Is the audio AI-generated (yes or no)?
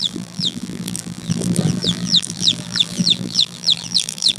yes